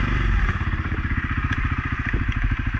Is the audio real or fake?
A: fake